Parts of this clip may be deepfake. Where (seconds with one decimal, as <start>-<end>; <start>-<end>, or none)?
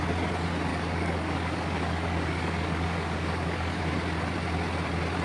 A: 0.7-3.8